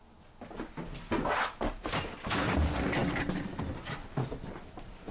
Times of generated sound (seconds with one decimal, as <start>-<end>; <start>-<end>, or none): none